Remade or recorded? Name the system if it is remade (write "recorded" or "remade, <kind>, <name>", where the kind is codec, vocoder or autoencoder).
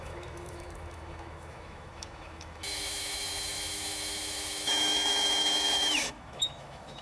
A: remade, autoencoder, DAC-VAE